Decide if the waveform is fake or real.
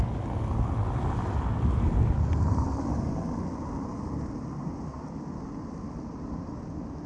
real